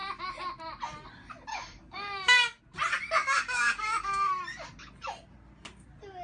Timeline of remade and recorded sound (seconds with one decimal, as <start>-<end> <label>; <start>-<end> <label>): 0.0-1.5 recorded; 1.5-2.6 remade; 2.6-3.2 recorded; 3.2-4.3 remade; 4.3-6.2 recorded